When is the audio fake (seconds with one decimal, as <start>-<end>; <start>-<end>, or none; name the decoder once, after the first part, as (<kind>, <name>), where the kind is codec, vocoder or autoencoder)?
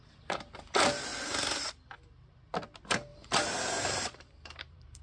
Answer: 1.1-1.7 (vocoder, BigVGAN v2); 3.1-5.0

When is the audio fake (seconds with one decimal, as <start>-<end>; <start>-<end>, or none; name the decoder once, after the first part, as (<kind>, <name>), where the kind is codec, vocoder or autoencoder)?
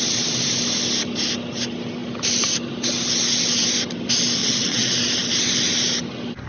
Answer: 4.4-4.9 (vocoder, WaveNeXt)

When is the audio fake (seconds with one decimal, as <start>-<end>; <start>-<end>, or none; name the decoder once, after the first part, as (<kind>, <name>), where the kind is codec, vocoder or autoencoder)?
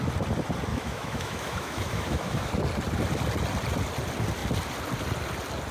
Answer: 0.7-2.5 (autoencoder, DAC-VAE)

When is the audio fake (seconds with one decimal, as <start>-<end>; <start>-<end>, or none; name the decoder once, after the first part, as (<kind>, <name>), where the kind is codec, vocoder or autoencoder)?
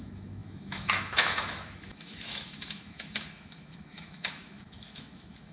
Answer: 0.0-5.5 (autoencoder, DAC-VAE)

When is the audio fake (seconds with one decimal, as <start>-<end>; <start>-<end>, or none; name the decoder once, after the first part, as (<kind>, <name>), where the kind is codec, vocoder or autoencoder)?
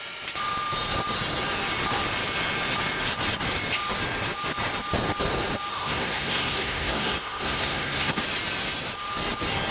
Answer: 5.7-8.2 (codec, SNAC)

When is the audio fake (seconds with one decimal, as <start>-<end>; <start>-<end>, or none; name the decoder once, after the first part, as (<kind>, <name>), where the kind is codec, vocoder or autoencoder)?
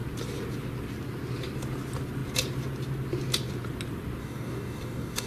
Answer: 4.2-5.3 (codec, DAC)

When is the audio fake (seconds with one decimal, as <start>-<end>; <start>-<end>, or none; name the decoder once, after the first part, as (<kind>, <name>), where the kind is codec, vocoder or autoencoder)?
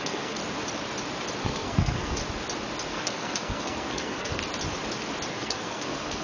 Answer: 0.0-0.4 (codec, SNAC); 1.4-2.2; 2.9-4.4; 5.3-6.2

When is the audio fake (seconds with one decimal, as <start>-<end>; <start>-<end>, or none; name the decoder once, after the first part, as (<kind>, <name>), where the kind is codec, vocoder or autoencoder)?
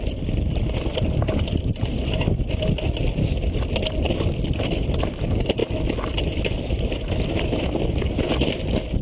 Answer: none